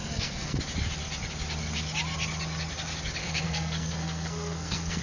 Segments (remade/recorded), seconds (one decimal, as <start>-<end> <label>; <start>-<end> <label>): 0.0-0.6 remade; 0.6-3.2 recorded; 3.2-5.0 remade